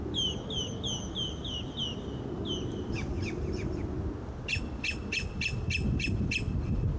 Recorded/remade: recorded